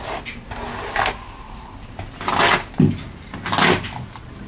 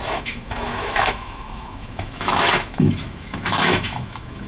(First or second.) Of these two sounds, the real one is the first